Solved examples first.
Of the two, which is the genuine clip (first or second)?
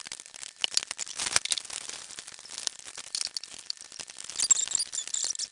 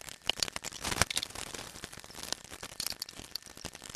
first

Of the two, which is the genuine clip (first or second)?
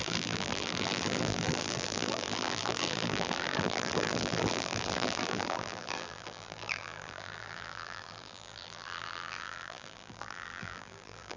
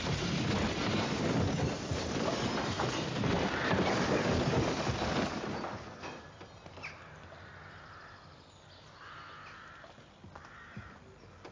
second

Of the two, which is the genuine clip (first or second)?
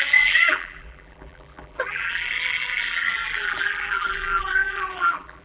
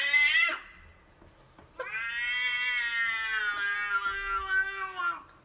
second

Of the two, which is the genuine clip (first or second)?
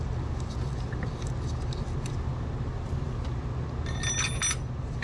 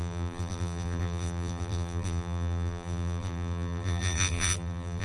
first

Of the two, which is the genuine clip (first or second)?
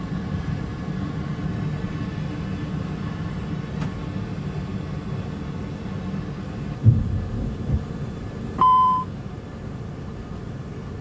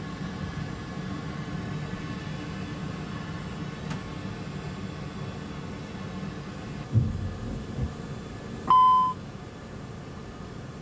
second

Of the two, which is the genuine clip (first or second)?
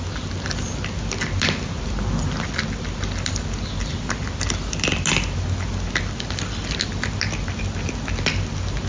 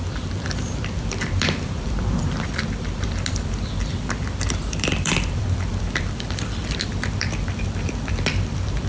first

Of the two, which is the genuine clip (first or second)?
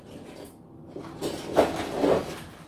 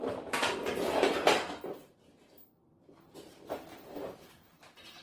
first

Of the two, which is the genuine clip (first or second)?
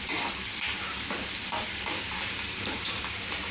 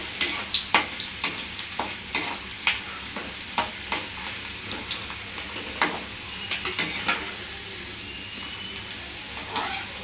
second